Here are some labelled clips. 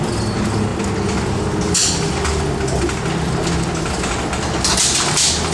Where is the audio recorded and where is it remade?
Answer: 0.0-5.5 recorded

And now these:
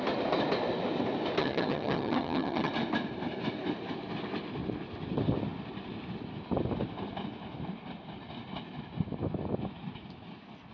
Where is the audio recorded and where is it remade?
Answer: 0.0-1.4 recorded; 1.4-2.7 remade; 2.7-10.7 recorded

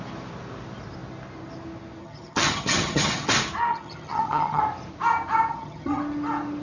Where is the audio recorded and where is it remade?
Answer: 0.0-2.0 recorded; 2.0-3.3 remade; 3.3-3.7 recorded; 3.7-4.6 remade; 4.6-5.5 recorded; 5.5-6.0 remade; 6.0-6.6 recorded

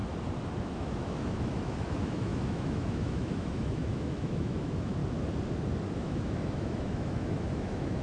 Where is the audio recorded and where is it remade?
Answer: 0.0-0.6 recorded; 0.6-5.0 remade; 5.0-5.9 recorded; 5.9-8.0 remade

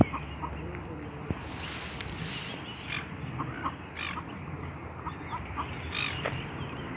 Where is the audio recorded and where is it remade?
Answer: 0.0-7.0 recorded

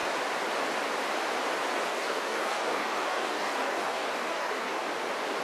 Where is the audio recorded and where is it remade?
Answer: 0.0-1.9 recorded; 1.9-4.8 remade; 4.8-5.4 recorded

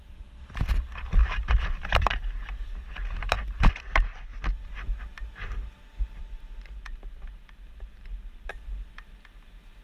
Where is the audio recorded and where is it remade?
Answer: 0.0-1.2 recorded; 1.2-3.7 remade; 3.7-6.2 recorded; 6.2-8.5 remade; 8.5-9.8 recorded